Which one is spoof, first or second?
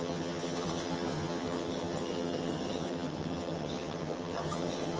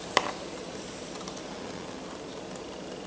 first